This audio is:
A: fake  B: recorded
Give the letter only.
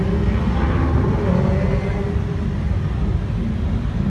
B